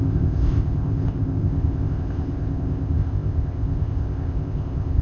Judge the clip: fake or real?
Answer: fake